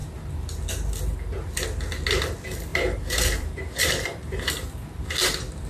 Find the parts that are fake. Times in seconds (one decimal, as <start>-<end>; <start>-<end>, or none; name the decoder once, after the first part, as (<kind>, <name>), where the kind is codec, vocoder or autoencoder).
2.7-4.5 (vocoder, BigVGAN v2)